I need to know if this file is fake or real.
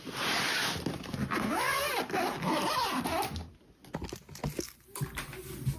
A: real